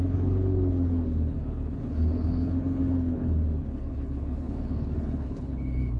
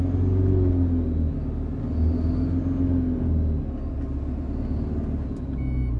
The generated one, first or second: first